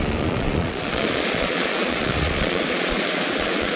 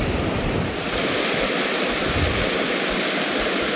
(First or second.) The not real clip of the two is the first